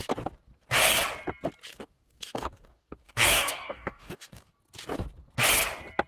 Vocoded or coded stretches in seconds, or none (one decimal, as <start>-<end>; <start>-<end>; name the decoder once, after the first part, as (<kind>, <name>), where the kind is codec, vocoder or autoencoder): 1.7-4.5 (codec, DAC)